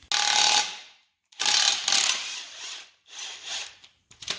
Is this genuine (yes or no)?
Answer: yes